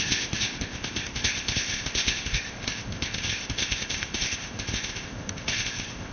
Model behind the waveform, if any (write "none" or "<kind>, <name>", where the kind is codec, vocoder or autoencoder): codec, ZipCodec